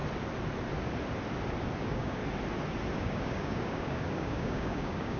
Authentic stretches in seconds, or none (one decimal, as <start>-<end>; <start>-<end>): 0.0-1.8; 2.2-3.0